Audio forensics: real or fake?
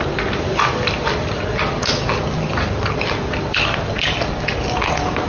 real